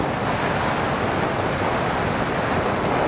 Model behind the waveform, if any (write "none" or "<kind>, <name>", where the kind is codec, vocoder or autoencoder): none